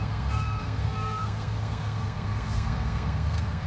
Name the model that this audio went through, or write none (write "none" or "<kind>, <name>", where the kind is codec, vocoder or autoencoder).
codec, SNAC